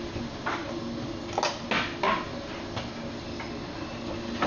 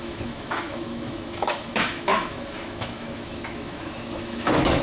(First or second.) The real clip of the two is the first